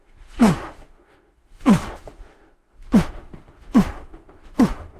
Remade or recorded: remade